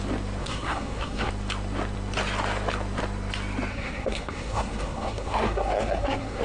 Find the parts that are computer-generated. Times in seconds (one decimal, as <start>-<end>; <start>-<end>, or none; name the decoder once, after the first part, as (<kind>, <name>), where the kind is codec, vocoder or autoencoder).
0.4-1.3 (codec, SNAC); 3.7-6.4

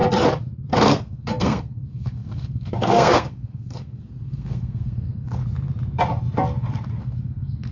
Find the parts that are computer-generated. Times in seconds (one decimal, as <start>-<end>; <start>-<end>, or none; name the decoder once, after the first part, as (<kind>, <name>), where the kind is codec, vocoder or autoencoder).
0.7-5.4 (codec, SNAC); 7.0-7.7

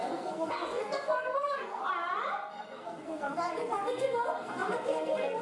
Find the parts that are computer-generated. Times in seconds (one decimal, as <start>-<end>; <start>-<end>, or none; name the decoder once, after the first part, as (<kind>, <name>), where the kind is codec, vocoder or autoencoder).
0.0-1.8 (codec, SNAC); 2.5-5.4